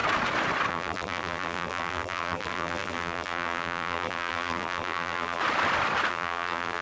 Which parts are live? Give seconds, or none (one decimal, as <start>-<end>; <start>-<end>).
0.0-0.7; 5.4-6.1